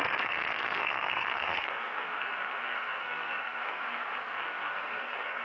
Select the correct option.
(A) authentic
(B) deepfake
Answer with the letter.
B